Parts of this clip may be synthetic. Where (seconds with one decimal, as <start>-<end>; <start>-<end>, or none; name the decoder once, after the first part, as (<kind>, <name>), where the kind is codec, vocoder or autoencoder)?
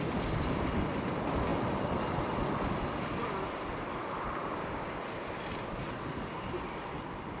4.4-5.0 (codec, DAC)